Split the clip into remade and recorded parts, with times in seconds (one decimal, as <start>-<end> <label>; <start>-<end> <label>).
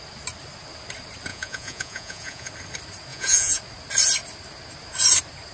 0.0-1.3 recorded; 1.3-2.5 remade; 2.5-3.1 recorded; 3.1-3.6 remade; 3.6-5.5 recorded